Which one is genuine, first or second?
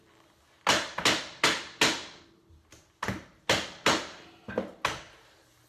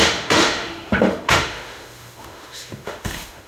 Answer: first